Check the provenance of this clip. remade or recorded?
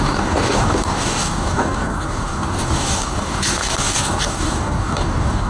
remade